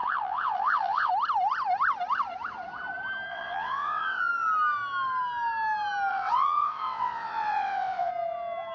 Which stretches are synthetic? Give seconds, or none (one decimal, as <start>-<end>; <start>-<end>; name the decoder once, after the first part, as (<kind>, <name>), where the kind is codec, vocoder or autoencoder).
0.0-1.1 (vocoder, WaveNeXt); 3.3-4.2; 6.1-8.1